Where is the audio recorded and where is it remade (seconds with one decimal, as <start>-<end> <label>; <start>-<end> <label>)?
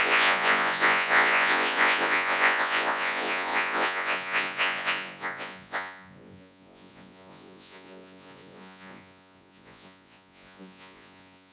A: 0.0-11.5 remade